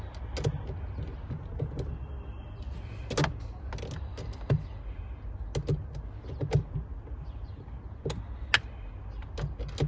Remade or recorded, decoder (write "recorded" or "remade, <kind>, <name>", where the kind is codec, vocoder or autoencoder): recorded